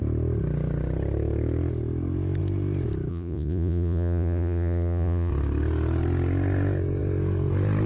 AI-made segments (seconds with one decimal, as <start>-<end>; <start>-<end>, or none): 3.1-5.3